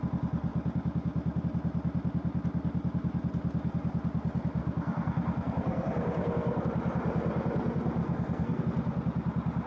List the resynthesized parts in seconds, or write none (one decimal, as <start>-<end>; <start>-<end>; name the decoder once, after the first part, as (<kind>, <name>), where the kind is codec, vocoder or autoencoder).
4.6-6.6 (codec, SNAC); 8.0-8.6